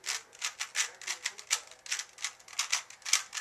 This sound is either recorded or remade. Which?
recorded